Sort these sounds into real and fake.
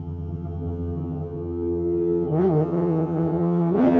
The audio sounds fake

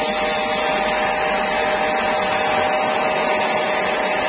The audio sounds real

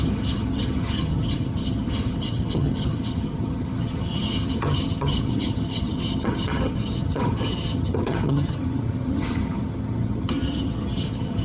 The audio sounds fake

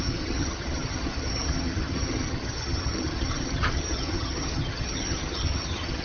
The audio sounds fake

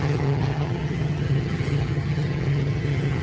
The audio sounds fake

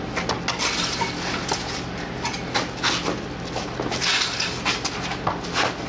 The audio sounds real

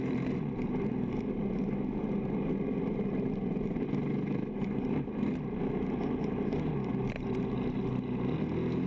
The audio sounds real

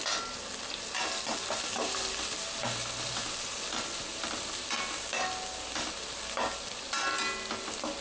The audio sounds real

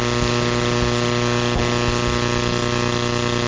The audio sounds real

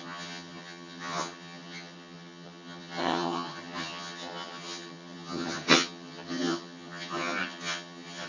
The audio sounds fake